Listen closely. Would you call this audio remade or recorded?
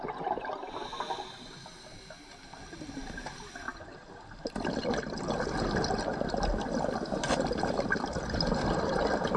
recorded